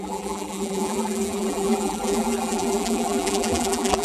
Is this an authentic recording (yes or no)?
no